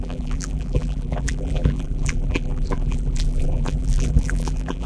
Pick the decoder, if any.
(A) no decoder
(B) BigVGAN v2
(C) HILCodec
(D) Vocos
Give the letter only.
B